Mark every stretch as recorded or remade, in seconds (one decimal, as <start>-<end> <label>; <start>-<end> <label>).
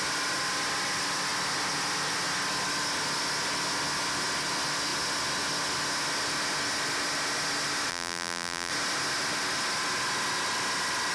0.0-7.9 recorded; 7.9-8.7 remade; 8.7-11.1 recorded